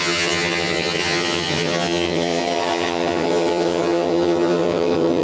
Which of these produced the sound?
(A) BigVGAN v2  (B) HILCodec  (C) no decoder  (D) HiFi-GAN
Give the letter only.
D